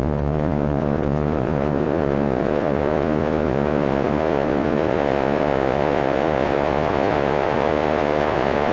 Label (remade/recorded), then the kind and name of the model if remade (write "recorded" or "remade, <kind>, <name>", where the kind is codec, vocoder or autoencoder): remade, vocoder, Vocos